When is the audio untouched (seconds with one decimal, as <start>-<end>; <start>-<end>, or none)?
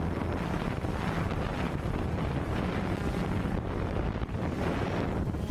0.0-1.5; 4.8-5.5